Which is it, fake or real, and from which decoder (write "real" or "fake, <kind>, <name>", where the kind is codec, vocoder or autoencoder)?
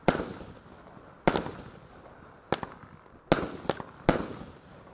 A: real